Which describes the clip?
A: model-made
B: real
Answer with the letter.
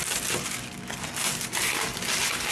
B